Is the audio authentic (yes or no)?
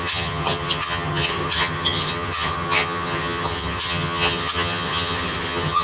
no